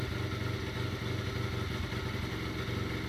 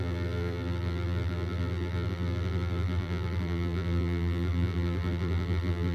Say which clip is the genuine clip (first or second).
first